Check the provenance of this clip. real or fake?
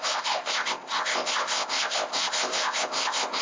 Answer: fake